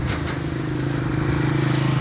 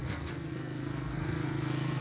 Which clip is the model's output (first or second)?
second